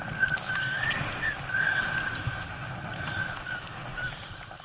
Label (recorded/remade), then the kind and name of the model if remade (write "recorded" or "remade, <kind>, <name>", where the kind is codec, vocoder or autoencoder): recorded